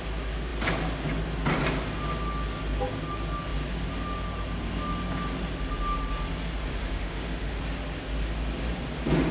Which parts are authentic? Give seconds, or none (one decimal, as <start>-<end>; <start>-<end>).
0.0-6.7; 7.6-9.3